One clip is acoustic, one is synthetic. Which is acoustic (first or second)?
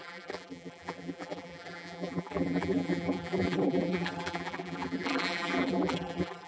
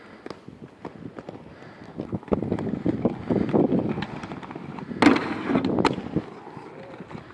second